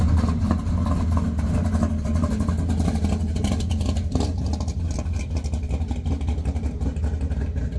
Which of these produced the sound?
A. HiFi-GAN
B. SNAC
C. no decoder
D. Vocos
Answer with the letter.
C